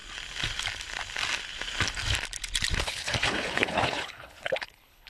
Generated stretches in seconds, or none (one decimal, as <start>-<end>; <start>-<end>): 2.8-5.1